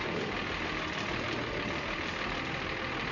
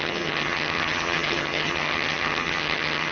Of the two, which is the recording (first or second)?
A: first